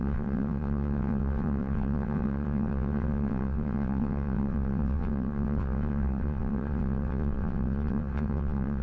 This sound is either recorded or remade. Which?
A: remade